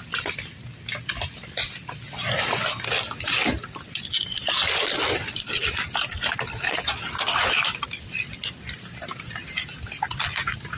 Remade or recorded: recorded